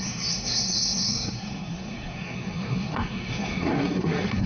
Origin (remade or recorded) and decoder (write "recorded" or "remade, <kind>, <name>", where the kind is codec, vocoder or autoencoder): remade, codec, SNAC